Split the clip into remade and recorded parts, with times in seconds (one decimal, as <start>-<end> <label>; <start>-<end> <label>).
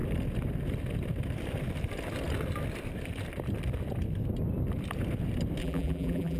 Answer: 0.0-5.6 recorded; 5.6-6.4 remade